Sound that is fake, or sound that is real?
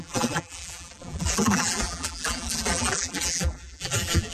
fake